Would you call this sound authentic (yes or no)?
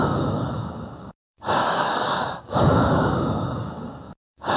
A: no